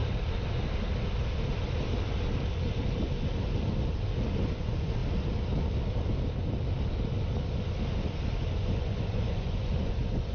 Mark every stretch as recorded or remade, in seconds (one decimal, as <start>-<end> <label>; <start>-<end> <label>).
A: 0.0-4.5 recorded; 4.5-5.0 remade; 5.0-8.6 recorded; 8.6-10.3 remade